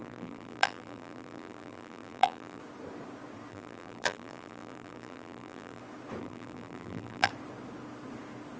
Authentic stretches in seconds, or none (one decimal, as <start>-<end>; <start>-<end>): 2.6-3.5; 5.8-6.2; 7.3-8.6